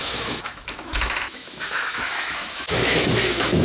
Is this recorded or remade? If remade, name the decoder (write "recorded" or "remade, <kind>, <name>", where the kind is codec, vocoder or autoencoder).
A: remade, autoencoder, DAC-VAE